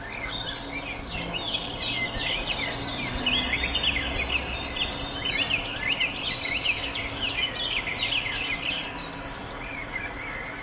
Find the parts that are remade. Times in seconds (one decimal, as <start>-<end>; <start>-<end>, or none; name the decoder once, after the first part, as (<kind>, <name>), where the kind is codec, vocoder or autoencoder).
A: 9.4-10.2 (vocoder, Vocos)